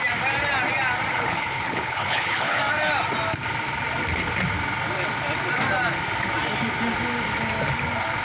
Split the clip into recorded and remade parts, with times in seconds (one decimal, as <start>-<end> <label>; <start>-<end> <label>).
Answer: 0.0-1.1 recorded; 1.1-2.6 remade; 2.6-8.2 recorded